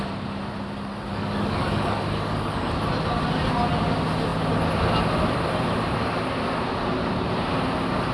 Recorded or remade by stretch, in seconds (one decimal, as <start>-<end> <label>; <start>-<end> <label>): 0.0-1.1 recorded; 1.1-2.7 remade; 2.7-8.1 recorded